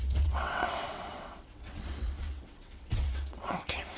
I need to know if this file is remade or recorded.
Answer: remade